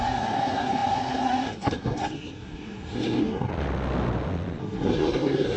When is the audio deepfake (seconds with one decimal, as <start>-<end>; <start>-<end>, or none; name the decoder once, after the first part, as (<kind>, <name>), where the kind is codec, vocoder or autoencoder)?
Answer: 0.0-3.5 (codec, SNAC); 4.6-5.6